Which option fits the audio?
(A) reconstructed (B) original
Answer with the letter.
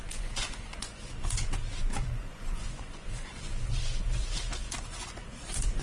A